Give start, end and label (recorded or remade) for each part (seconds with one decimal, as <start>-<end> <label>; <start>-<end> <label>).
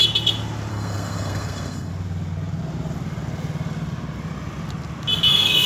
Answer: 0.0-0.7 recorded; 0.7-1.9 remade; 1.9-5.3 recorded; 5.3-5.7 remade